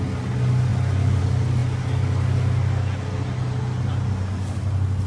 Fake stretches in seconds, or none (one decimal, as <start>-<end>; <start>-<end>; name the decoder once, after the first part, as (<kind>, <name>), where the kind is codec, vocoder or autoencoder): none